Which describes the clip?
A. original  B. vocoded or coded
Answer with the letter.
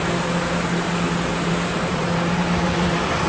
B